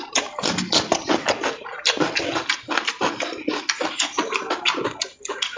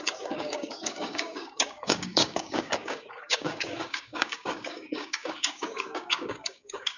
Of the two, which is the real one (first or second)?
first